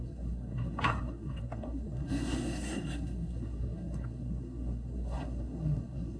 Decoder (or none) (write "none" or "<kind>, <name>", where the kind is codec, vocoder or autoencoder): codec, SNAC